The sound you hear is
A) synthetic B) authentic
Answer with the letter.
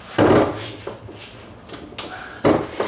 B